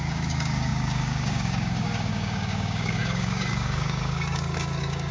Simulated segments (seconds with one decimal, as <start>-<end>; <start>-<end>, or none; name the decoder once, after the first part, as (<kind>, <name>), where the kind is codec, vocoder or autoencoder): 0.0-5.1 (codec, DAC)